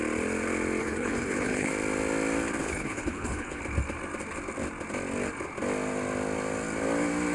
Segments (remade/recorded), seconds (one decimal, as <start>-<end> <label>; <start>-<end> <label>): 0.0-0.8 recorded; 0.8-1.7 remade; 1.7-2.6 recorded; 2.6-3.6 remade; 3.6-7.3 recorded